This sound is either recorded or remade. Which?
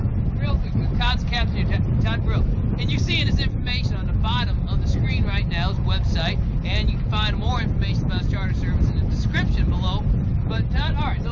recorded